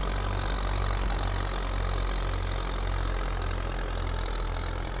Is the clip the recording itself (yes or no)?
yes